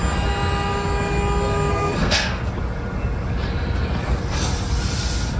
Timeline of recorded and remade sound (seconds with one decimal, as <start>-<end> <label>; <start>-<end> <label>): 0.0-1.7 recorded; 1.7-2.5 remade; 2.5-5.4 recorded